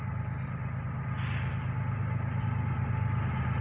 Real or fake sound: real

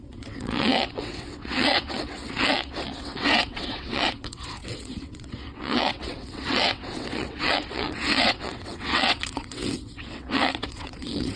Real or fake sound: fake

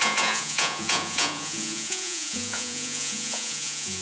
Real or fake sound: fake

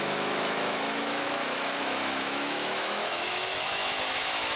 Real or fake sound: fake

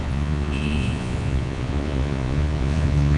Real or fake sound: fake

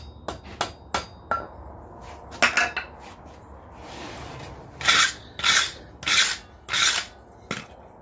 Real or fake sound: real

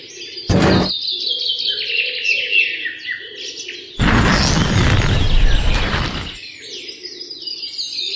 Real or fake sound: real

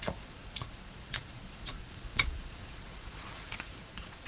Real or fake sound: fake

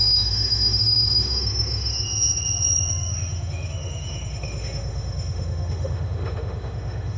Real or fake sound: fake